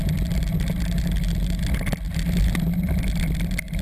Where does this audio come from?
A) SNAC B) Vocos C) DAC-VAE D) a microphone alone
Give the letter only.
D